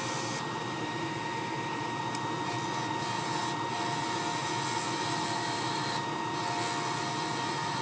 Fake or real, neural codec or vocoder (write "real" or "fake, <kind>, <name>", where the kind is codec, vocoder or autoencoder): real